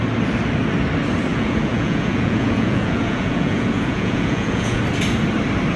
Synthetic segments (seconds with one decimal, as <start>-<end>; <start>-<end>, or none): 1.3-4.8